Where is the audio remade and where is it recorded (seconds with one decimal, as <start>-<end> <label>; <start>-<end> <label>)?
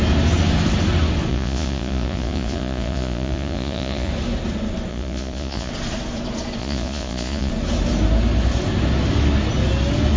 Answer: 0.0-1.3 recorded; 1.3-4.1 remade; 4.1-4.9 recorded; 4.9-5.7 remade; 5.7-6.6 recorded; 6.6-7.5 remade; 7.5-10.2 recorded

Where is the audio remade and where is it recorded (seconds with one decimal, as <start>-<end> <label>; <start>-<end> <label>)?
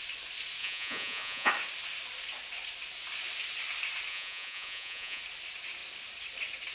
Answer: 0.0-0.6 recorded; 0.6-1.5 remade; 1.5-4.1 recorded; 4.1-5.2 remade; 5.2-6.7 recorded